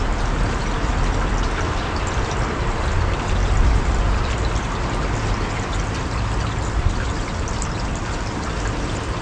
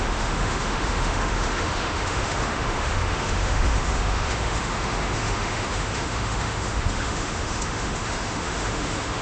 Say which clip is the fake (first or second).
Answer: second